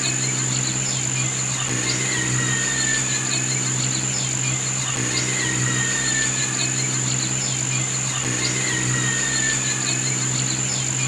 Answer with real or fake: real